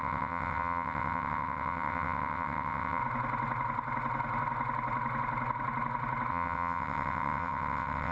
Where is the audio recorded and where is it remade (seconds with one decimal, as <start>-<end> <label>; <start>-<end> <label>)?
0.0-3.0 remade; 3.0-6.3 recorded; 6.3-8.1 remade